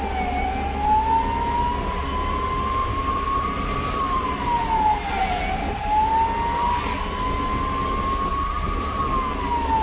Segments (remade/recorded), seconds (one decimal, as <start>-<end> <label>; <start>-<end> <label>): 0.0-2.8 recorded; 2.8-5.3 remade; 5.3-8.3 recorded; 8.3-9.0 remade; 9.0-9.8 recorded